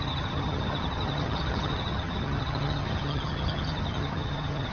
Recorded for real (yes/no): no